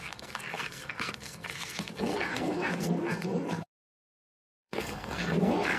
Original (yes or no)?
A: no